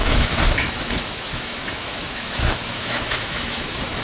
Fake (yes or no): yes